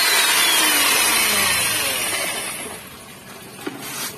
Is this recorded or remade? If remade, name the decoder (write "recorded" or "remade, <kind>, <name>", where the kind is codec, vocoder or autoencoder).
recorded